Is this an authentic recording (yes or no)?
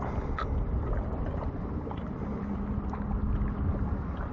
yes